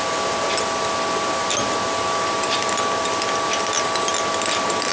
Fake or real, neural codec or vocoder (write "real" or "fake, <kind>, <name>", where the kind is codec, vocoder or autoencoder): real